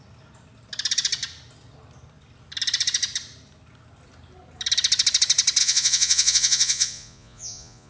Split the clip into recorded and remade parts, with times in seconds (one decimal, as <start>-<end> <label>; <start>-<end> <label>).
0.0-5.6 recorded; 5.6-7.9 remade